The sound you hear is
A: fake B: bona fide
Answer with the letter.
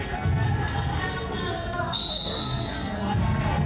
A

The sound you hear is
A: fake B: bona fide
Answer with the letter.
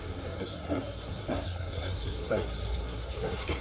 A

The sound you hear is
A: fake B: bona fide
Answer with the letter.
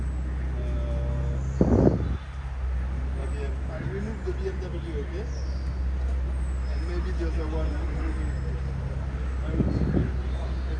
B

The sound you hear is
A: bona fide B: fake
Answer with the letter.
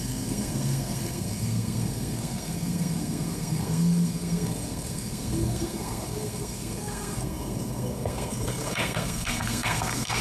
B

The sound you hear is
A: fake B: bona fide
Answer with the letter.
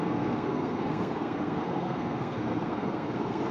A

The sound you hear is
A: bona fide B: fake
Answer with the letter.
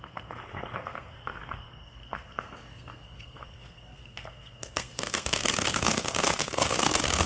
B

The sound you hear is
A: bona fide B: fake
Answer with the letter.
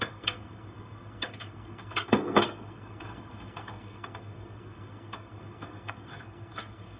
B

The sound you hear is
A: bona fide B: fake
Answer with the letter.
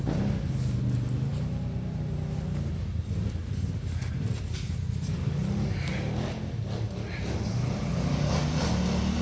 A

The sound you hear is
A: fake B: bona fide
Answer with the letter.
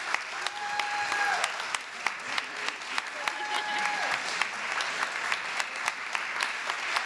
B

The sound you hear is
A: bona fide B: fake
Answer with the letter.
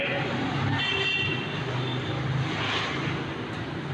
A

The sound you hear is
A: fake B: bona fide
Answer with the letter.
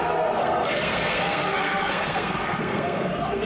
A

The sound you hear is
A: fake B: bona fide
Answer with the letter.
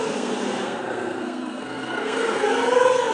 A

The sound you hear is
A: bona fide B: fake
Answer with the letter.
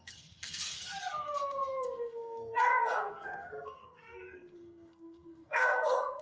B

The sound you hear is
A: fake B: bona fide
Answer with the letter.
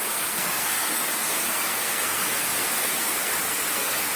A